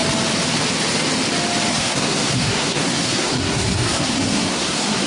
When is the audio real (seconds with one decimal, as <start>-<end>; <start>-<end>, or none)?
0.0-1.7